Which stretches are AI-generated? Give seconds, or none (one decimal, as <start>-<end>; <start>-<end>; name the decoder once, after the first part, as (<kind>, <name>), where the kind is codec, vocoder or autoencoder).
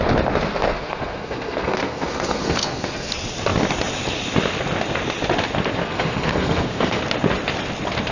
0.5-3.1 (codec, SNAC); 5.8-7.0